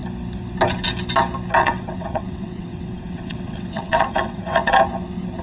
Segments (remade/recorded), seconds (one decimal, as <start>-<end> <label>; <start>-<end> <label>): 0.0-1.6 recorded; 1.6-4.8 remade; 4.8-5.4 recorded